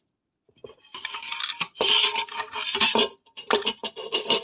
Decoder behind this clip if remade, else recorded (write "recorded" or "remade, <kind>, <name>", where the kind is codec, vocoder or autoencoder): recorded